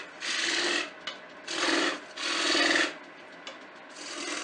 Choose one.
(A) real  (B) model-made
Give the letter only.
A